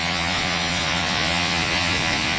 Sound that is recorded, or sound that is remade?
remade